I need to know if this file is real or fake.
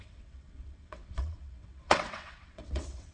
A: fake